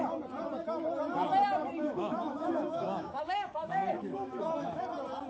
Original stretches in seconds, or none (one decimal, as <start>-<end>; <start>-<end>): 0.0-1.6; 4.8-5.3